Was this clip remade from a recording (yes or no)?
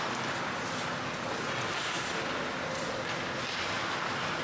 no